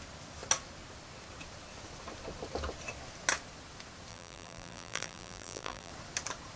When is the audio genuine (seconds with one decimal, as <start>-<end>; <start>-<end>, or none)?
0.0-4.1; 5.9-6.6